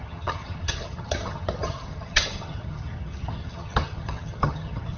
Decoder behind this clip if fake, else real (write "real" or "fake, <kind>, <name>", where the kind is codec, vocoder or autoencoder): fake, vocoder, HiFi-GAN